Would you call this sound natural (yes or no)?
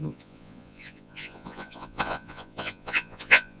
no